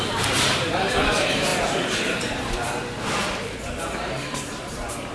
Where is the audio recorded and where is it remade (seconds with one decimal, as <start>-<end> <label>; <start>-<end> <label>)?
0.0-5.1 remade